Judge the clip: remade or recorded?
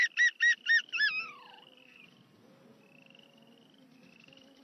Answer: recorded